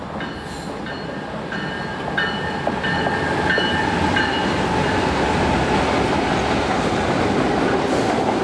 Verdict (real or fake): real